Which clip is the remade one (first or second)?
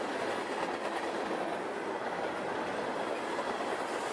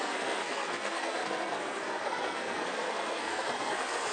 second